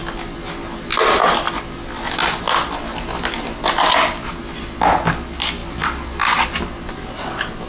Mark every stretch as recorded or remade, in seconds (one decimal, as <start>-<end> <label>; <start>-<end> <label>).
0.0-7.7 recorded